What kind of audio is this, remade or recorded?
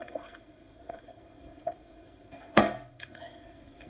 remade